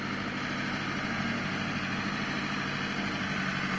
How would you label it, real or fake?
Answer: real